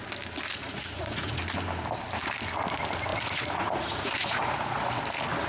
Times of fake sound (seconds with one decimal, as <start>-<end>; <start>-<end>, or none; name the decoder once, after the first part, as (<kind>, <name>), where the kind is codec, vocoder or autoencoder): 0.6-1.4 (vocoder, Vocos); 3.1-5.0